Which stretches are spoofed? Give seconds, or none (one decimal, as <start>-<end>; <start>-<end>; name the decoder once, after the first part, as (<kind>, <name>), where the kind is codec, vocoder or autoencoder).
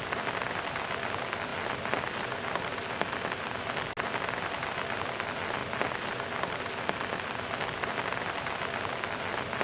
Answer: none